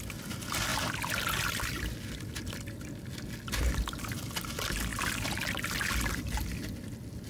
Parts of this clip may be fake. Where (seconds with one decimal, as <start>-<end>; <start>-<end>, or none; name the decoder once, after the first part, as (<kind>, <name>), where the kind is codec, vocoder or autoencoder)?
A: none